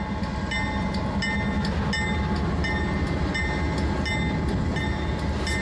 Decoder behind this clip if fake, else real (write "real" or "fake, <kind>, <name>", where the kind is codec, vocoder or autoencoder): real